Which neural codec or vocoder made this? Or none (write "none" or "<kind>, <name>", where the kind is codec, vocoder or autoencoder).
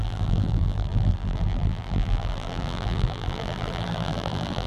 vocoder, BigVGAN v2